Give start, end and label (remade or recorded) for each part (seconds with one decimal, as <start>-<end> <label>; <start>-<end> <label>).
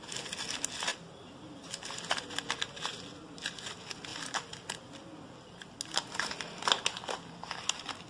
0.0-8.1 recorded